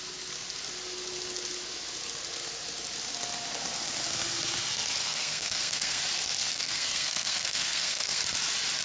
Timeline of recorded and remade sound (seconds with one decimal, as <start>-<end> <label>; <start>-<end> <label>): 0.0-5.0 recorded; 5.0-6.0 remade; 6.0-6.4 recorded; 6.4-8.2 remade; 8.2-8.8 recorded